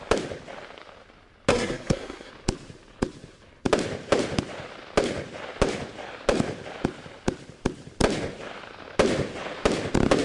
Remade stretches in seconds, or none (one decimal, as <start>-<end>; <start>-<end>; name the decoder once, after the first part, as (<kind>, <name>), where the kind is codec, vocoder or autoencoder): 1.5-2.3 (codec, SNAC)